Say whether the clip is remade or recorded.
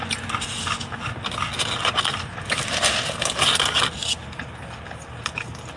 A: recorded